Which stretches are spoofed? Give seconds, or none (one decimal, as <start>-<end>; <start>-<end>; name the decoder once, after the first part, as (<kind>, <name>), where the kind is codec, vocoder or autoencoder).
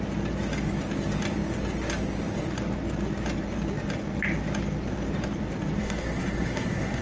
5.8-7.0 (codec, SNAC)